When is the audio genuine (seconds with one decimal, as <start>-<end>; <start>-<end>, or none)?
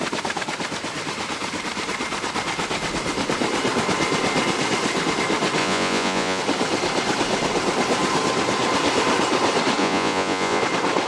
0.0-5.6; 6.4-9.8; 10.6-11.1